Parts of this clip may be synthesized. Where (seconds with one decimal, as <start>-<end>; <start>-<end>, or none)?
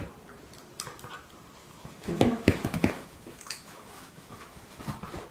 1.6-4.8